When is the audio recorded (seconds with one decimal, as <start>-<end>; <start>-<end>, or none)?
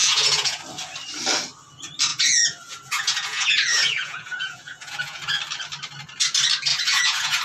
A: 0.6-2.1; 5.4-6.7